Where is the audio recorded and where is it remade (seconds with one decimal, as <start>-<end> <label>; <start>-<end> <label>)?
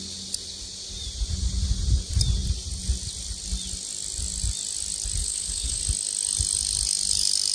0.0-5.2 recorded; 5.2-5.8 remade; 5.8-7.5 recorded